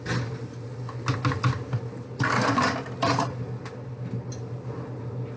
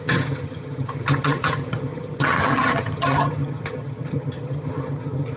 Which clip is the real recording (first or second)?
first